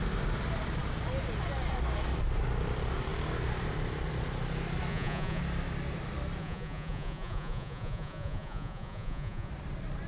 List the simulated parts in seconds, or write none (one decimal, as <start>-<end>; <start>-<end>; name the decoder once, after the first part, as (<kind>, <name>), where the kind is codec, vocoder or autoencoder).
4.9-5.4 (vocoder, Vocos); 6.4-9.5